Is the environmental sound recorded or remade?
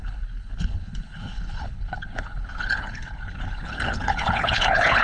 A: remade